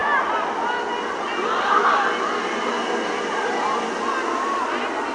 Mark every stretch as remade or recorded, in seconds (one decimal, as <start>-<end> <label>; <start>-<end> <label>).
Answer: 0.0-5.1 recorded